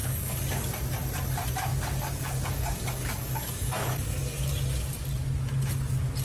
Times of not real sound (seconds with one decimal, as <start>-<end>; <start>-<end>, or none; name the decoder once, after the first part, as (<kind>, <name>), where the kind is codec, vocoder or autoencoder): 0.0-0.8 (codec, DAC); 1.7-4.5